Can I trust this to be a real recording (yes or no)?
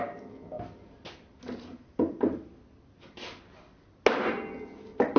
yes